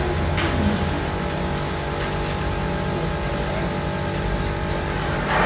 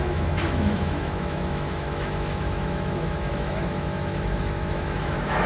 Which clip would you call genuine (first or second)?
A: first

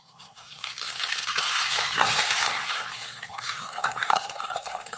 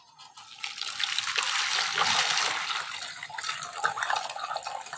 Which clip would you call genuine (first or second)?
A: second